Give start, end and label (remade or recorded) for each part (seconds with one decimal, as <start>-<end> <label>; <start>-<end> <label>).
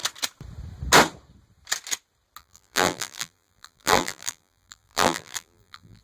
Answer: 0.0-2.4 recorded; 2.4-6.0 remade